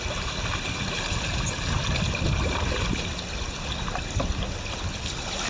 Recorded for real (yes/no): yes